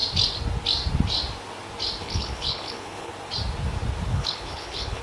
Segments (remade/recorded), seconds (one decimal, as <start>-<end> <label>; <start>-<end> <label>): 0.0-2.0 recorded; 2.0-3.1 remade; 3.1-4.1 recorded; 4.1-5.0 remade